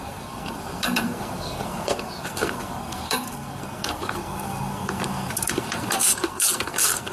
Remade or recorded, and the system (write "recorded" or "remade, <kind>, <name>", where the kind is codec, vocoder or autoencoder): remade, codec, SNAC